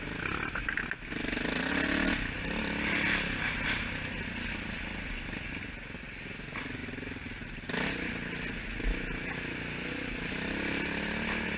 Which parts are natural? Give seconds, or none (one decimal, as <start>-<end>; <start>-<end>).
0.0-11.6